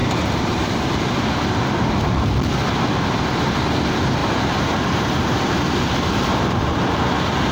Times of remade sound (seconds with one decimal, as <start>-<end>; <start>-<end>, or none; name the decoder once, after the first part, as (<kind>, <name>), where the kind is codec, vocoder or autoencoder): 0.0-1.1 (vocoder, BigVGAN v2); 4.2-7.0